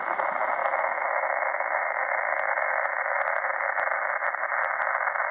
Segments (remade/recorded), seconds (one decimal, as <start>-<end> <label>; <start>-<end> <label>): 0.0-5.3 recorded